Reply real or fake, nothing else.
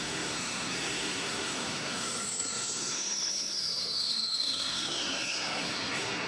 fake